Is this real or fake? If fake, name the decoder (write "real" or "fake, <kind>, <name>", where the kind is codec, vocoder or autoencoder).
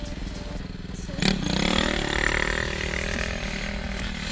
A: real